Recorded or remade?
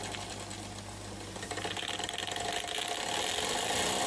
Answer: recorded